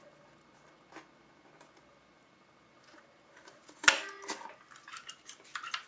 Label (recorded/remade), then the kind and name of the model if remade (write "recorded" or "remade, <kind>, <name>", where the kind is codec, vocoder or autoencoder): recorded